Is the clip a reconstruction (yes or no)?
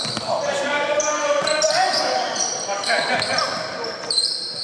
yes